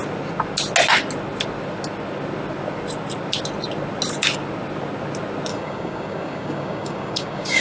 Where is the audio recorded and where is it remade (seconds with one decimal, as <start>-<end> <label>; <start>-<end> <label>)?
0.0-5.5 recorded; 5.5-7.6 remade

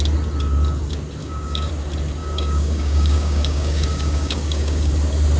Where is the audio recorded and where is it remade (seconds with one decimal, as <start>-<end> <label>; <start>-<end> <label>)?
0.0-1.2 recorded; 1.2-1.7 remade; 1.7-2.2 recorded; 2.2-4.9 remade; 4.9-5.4 recorded

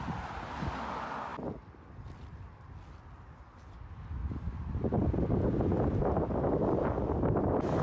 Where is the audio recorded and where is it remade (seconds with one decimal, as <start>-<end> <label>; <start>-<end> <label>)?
0.0-7.8 recorded

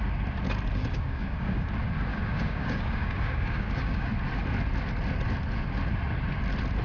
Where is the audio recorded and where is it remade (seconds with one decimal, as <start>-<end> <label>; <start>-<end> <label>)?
0.0-0.8 recorded; 0.8-1.7 remade; 1.7-2.1 recorded; 2.1-4.1 remade; 4.1-6.8 recorded